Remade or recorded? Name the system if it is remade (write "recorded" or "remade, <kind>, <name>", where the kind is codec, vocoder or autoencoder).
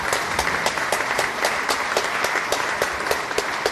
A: recorded